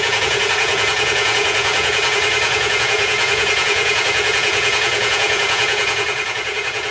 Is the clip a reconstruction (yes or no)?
yes